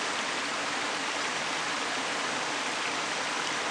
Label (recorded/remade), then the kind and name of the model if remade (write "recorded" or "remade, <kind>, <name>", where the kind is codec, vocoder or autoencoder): recorded